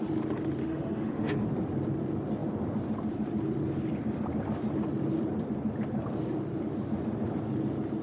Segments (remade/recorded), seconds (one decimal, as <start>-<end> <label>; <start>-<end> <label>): 0.0-0.6 recorded; 0.6-1.4 remade; 1.4-8.0 recorded